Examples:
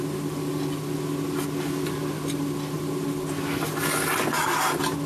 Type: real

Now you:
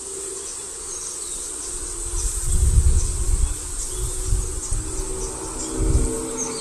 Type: real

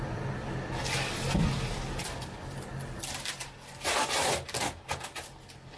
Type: real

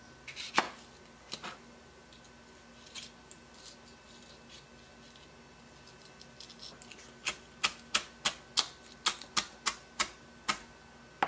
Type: real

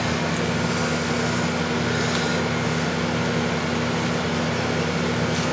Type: real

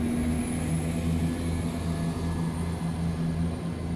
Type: real